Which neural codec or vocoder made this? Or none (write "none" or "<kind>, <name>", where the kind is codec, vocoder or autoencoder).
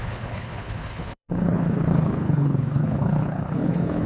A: codec, HILCodec